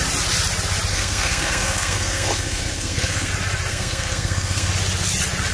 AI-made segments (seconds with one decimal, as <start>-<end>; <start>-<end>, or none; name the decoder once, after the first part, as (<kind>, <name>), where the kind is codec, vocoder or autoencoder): 0.9-3.3 (codec, SNAC); 3.7-4.7